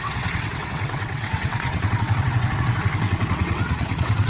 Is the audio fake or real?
fake